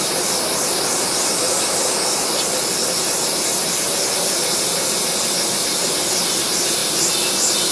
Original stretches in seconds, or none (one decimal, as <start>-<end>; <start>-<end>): 0.0-7.7